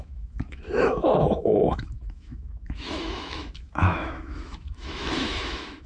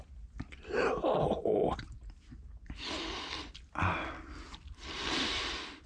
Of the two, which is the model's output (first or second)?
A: first